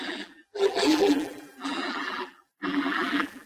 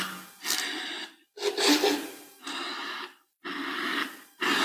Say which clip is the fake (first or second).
first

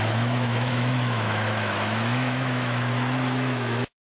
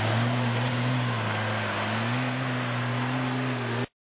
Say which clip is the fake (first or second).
first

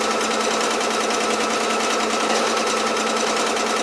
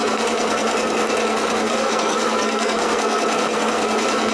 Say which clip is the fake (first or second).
second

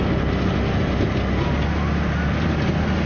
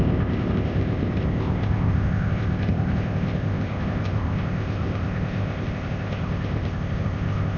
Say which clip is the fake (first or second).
second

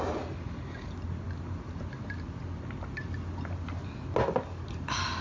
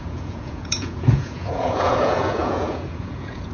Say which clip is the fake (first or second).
second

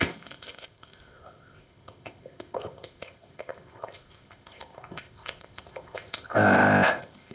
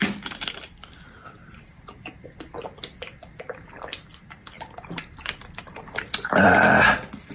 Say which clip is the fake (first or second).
first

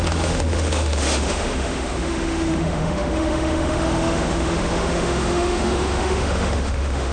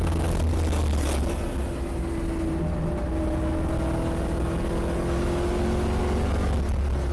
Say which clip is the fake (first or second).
first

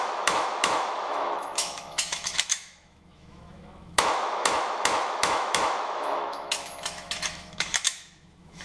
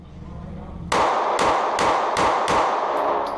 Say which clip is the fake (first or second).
first